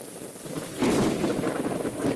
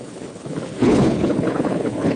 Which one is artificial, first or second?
second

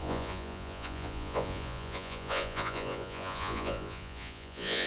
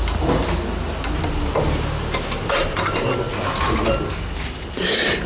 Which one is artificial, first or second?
first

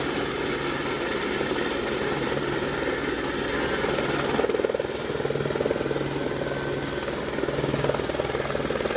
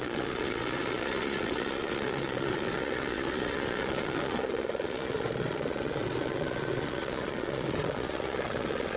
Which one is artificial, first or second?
second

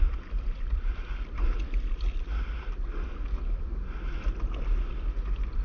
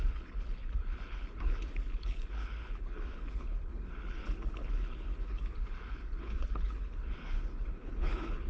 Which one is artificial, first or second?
second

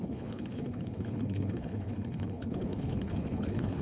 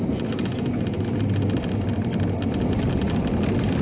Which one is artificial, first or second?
first